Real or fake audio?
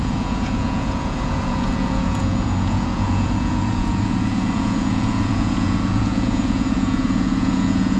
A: fake